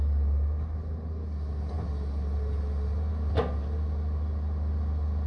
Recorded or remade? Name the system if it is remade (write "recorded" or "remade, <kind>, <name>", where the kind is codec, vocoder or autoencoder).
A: recorded